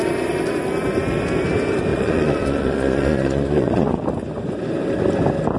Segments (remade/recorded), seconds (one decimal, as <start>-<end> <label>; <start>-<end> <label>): 0.0-1.9 recorded; 1.9-4.0 remade; 4.0-5.6 recorded